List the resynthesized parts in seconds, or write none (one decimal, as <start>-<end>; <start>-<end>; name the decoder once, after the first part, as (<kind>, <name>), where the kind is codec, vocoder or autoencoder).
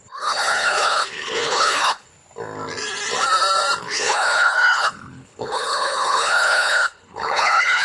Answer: 0.0-2.1 (codec, HILCodec); 3.8-7.8